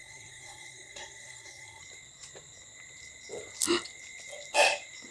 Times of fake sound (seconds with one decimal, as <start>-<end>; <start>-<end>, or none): 0.0-1.8